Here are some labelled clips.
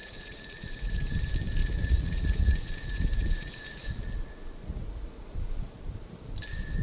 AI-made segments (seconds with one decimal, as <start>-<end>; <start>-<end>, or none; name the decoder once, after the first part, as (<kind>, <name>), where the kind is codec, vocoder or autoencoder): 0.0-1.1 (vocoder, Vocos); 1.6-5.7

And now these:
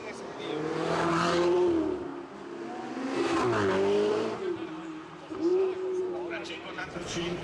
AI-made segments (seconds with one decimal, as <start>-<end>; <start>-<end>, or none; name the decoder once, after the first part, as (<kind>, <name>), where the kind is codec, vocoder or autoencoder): 0.0-2.1 (vocoder, BigVGAN v2); 4.1-7.4

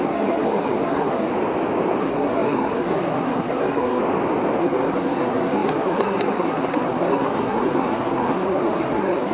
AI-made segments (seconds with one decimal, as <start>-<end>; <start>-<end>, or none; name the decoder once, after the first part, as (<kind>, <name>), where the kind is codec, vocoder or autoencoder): 0.0-1.3 (codec, SNAC); 2.0-4.0; 4.6-9.3

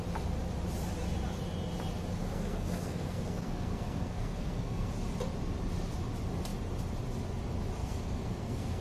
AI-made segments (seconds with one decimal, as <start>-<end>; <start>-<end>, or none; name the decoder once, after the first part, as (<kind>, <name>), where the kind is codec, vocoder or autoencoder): 2.2-4.9 (codec, SNAC); 7.8-8.8

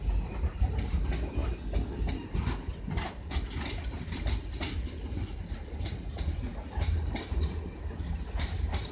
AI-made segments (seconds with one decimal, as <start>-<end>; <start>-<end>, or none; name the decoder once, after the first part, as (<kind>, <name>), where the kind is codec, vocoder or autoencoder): none

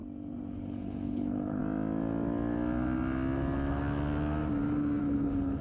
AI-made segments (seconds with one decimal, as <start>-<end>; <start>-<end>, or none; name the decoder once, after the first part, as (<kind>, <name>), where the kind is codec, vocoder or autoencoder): 0.5-1.6 (codec, HILCodec); 5.0-5.6

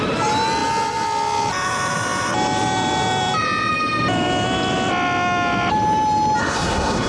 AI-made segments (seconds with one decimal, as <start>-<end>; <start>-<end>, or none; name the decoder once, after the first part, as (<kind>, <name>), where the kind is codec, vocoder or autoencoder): 6.4-7.1 (codec, SNAC)